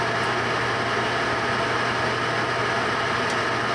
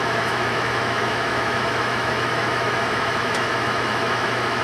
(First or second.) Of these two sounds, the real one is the first